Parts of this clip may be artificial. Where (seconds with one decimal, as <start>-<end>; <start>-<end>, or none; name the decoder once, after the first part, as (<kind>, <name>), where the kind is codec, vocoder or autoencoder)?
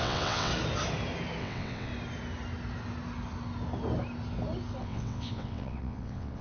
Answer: 0.0-0.5 (vocoder, WaveNeXt); 1.4-1.9; 4.8-6.4